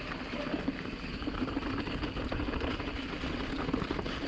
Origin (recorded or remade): recorded